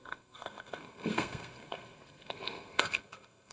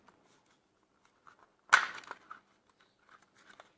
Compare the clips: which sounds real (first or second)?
second